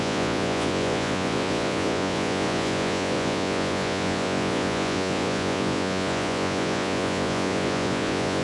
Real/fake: fake